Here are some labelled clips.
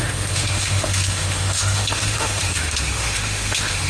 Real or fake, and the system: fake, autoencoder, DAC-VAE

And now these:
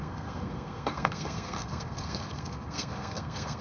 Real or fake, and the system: fake, codec, SNAC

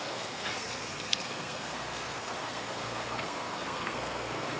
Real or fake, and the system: fake, codec, SNAC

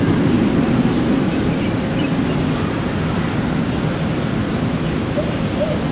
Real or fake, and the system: real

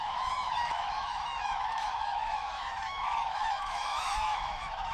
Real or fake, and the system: fake, autoencoder, DAC-VAE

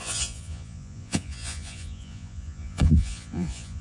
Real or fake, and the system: fake, vocoder, Vocos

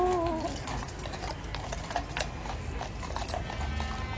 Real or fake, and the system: real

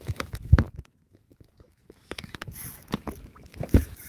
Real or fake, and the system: fake, autoencoder, DAC-VAE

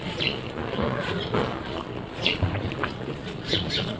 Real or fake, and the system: fake, vocoder, Vocos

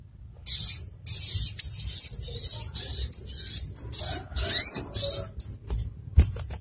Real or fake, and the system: real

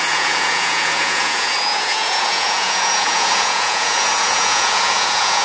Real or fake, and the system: fake, vocoder, Vocos